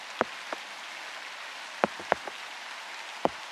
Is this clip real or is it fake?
real